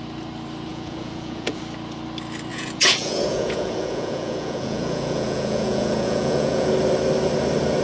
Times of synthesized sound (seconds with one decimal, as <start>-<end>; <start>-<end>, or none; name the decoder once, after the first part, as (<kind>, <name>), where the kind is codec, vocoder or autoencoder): 0.7-1.6 (vocoder, Vocos); 2.5-6.7

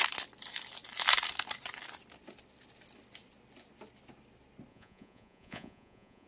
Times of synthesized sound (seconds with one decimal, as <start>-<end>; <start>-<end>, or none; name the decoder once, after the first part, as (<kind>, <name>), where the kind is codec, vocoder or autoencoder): 4.7-6.3 (vocoder, Vocos)

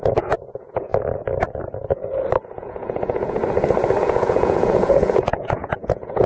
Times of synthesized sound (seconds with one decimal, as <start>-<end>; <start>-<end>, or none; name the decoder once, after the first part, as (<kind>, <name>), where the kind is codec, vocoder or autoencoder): 0.0-0.9 (vocoder, Vocos); 2.6-3.4; 4.0-6.3

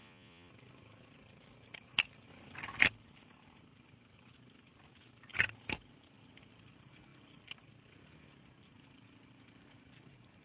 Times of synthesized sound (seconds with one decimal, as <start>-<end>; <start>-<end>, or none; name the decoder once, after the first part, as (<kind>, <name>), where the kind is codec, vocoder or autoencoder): 0.0-0.5 (vocoder, Vocos)

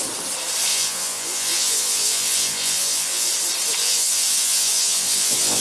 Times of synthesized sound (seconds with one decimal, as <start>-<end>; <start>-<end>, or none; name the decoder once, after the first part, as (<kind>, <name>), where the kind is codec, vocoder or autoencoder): 0.7-3.3 (vocoder, Vocos); 3.8-5.6

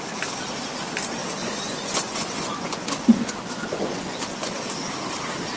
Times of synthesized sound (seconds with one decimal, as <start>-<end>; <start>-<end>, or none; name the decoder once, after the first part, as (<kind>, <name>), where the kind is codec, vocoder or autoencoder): 1.4-4.6 (vocoder, Vocos)

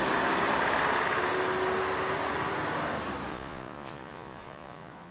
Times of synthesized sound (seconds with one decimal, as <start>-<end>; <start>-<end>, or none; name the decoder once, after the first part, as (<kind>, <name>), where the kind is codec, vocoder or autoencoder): 3.3-5.1 (vocoder, Vocos)